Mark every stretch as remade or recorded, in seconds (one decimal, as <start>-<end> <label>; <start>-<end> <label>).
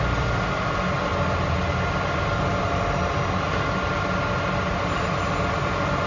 0.0-6.1 recorded